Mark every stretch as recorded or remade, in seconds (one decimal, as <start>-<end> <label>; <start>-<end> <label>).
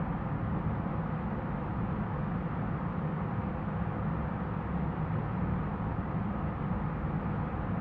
0.0-7.8 recorded